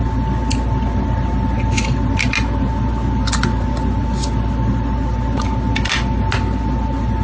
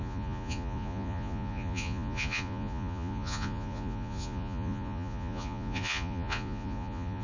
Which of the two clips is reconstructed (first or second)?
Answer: second